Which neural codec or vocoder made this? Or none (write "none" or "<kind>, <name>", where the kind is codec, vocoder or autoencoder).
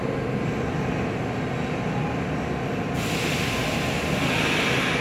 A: none